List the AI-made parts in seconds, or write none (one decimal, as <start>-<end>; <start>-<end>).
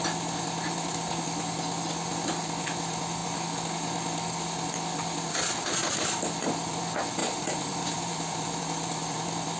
7.2-9.2